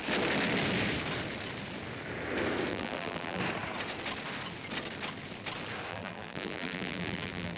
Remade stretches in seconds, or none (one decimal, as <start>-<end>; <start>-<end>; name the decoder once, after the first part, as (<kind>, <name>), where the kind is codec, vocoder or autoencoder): 2.7-3.4 (vocoder, BigVGAN v2); 5.9-7.6